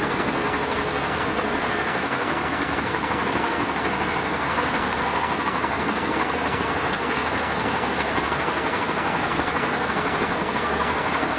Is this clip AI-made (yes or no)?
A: yes